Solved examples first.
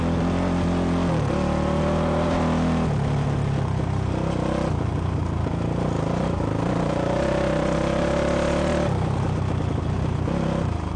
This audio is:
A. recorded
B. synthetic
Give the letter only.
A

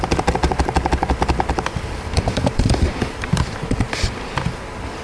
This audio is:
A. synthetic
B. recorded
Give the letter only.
A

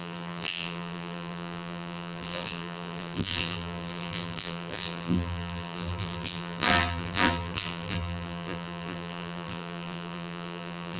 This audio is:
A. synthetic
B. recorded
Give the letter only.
A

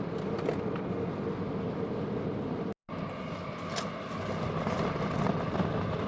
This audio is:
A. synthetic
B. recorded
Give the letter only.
B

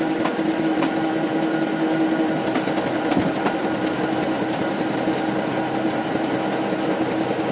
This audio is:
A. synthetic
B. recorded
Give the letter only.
B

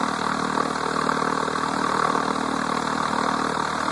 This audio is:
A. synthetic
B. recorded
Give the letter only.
B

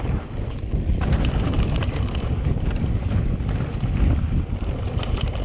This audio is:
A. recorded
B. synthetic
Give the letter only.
B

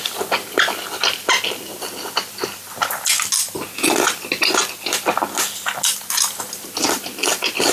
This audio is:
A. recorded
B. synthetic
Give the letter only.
A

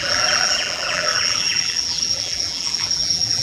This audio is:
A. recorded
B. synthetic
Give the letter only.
B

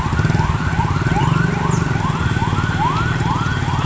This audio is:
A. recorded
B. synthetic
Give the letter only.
A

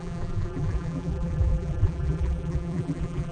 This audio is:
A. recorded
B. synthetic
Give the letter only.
B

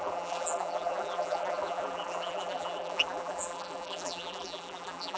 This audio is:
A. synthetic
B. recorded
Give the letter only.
A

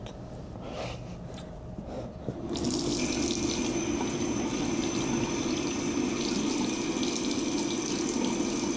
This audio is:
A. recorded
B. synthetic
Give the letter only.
A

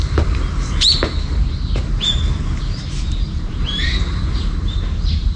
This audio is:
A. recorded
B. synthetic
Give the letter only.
B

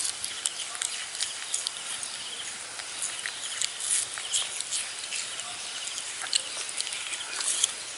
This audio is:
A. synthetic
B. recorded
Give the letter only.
B